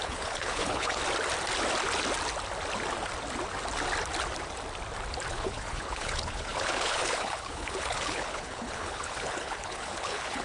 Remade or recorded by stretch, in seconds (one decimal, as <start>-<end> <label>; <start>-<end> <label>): 0.0-1.0 remade; 1.0-5.3 recorded; 5.3-10.4 remade

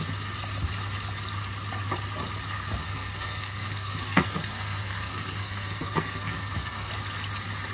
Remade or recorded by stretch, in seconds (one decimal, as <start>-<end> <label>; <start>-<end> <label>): 0.0-2.8 recorded; 2.8-6.9 remade; 6.9-7.7 recorded